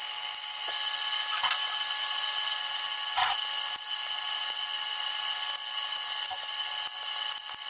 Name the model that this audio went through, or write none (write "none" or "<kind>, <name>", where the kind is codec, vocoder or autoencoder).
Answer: none